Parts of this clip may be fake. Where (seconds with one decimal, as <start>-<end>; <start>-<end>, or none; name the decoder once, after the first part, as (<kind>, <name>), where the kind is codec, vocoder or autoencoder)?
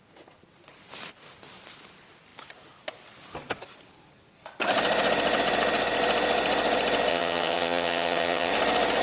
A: 7.1-8.5 (vocoder, HiFi-GAN)